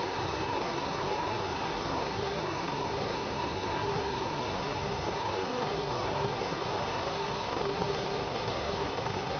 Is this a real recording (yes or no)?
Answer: no